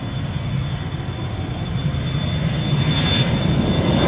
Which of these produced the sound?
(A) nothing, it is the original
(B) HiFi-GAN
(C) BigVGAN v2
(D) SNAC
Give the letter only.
A